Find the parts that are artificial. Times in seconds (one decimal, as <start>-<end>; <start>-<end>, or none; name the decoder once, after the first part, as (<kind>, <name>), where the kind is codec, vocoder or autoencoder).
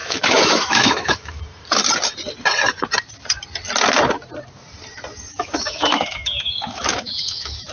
0.0-1.4 (autoencoder, DAC-VAE); 5.3-7.7